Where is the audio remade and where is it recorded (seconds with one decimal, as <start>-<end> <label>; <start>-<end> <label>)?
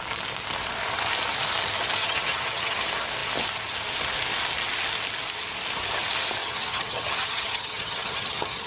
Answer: 0.0-2.0 recorded; 2.0-2.8 remade; 2.8-6.4 recorded; 6.4-8.7 remade